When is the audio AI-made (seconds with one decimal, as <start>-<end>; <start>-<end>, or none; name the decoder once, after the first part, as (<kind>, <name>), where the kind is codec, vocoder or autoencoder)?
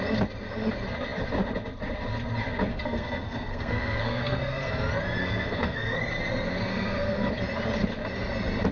2.7-4.7 (codec, SNAC); 5.2-6.1; 6.7-7.3